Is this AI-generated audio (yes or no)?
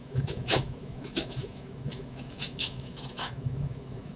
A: yes